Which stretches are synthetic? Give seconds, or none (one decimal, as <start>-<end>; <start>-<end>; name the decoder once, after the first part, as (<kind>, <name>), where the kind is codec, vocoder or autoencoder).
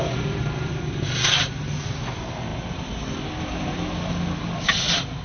none